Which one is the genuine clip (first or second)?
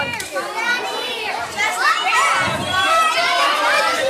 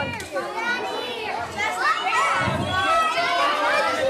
second